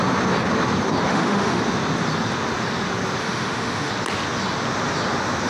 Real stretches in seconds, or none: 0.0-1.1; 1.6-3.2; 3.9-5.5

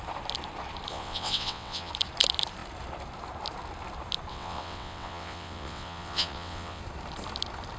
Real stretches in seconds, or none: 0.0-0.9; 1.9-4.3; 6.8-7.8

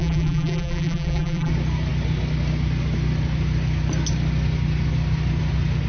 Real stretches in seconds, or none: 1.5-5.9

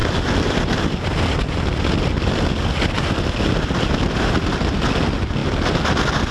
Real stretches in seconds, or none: 0.0-6.3